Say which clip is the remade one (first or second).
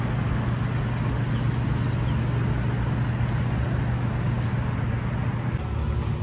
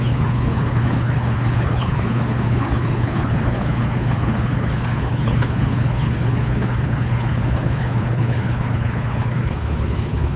second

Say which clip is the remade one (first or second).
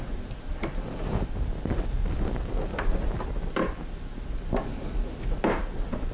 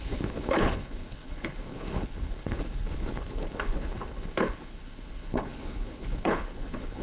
second